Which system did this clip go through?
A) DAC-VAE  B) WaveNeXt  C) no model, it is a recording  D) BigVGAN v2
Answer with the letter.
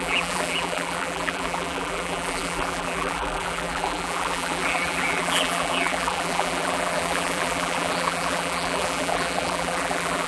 D